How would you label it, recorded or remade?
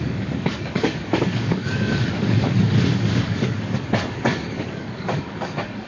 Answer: remade